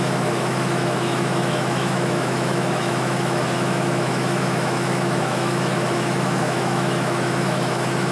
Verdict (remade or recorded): remade